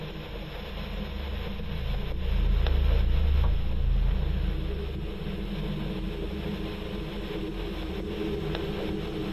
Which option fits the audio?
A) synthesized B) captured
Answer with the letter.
B